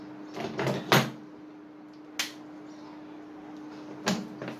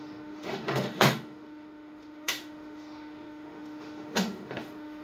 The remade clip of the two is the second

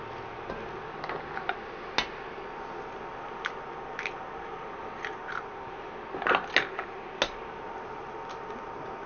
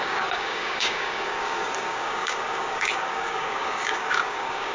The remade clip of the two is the second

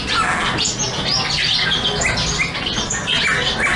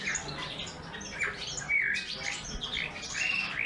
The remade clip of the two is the second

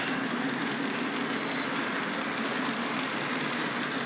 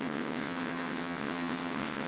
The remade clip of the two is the second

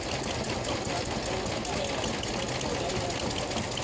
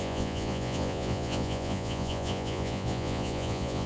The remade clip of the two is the second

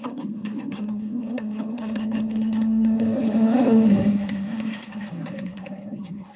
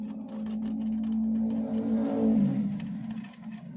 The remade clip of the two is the first